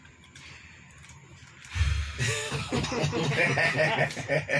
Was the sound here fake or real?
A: real